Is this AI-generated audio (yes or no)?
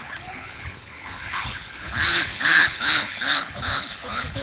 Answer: yes